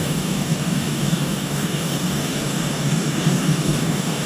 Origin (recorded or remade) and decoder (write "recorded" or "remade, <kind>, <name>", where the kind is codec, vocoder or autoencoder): remade, codec, DAC